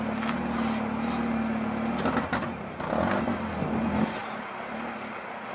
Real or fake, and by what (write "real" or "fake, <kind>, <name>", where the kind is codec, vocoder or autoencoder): real